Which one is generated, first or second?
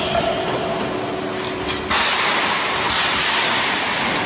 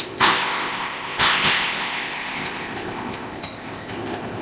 second